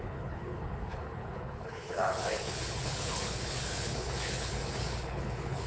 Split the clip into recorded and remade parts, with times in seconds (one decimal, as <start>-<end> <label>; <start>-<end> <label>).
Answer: 0.0-5.7 remade